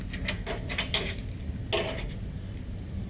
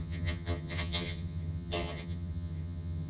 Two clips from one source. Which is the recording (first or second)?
first